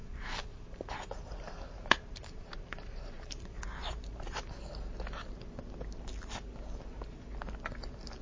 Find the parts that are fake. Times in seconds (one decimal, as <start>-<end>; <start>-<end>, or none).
0.0-4.6